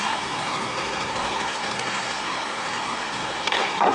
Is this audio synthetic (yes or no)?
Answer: yes